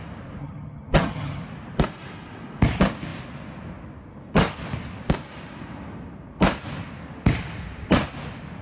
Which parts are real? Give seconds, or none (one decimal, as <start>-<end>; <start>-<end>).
0.0-0.4; 1.4-8.6

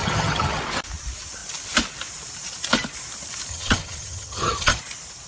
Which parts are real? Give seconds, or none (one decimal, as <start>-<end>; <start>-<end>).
0.6-3.5; 4.8-5.3

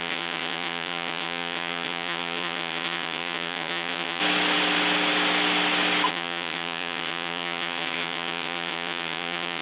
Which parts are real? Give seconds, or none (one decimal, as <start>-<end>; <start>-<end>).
4.2-6.1

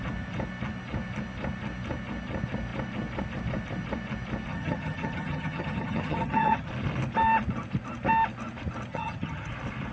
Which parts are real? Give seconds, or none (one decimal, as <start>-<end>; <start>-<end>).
0.0-4.5; 6.7-8.9; 9.5-9.9

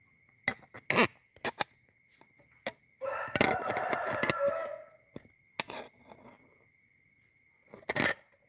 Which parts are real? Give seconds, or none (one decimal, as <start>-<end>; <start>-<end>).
0.0-8.5

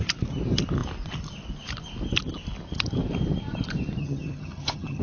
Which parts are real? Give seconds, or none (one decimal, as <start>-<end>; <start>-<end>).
0.0-4.0

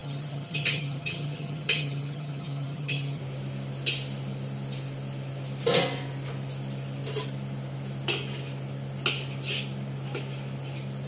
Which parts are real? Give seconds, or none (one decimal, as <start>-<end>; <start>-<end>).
3.2-11.1